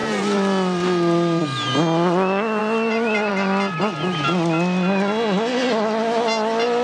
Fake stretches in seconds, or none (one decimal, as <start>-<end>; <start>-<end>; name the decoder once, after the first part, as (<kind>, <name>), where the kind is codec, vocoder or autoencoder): 0.0-1.4 (vocoder, BigVGAN v2); 2.6-3.3